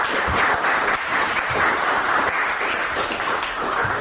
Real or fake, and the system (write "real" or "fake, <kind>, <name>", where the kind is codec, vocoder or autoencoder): fake, vocoder, BigVGAN v2